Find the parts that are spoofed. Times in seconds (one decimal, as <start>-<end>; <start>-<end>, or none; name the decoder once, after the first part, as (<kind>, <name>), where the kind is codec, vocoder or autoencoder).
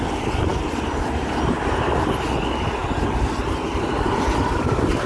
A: none